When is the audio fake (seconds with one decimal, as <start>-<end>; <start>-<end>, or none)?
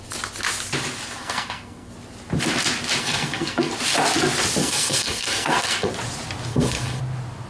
1.2-1.9; 3.0-3.7; 4.6-5.9; 6.5-7.0